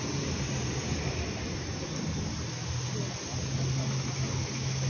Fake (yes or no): no